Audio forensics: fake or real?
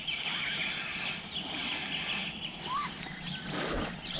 real